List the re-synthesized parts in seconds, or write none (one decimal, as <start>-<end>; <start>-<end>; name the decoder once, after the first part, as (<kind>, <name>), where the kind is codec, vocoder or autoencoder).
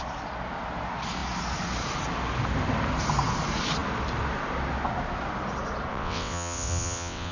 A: 5.9-7.3 (vocoder, WaveNeXt)